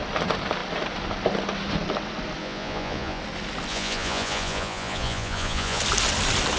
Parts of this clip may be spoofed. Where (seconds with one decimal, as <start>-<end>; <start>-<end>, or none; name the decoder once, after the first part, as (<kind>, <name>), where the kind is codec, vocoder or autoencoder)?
2.4-3.2 (vocoder, Vocos); 3.7-5.8